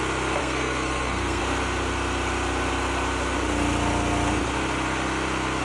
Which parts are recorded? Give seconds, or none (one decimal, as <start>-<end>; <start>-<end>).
0.0-0.4; 1.4-5.6